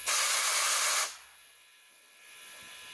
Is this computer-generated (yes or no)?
no